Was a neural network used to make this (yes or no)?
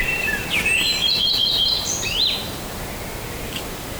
yes